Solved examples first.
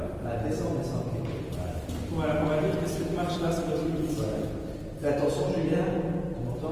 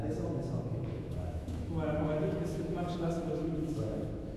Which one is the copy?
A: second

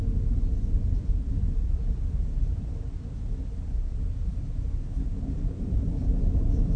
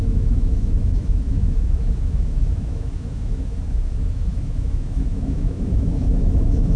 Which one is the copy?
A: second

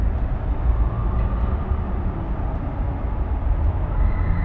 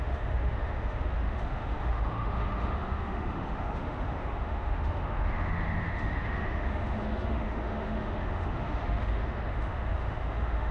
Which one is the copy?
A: second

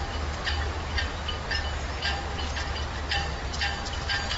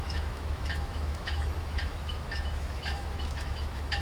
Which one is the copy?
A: second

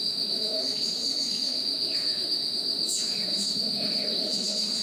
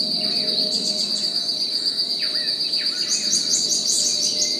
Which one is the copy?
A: first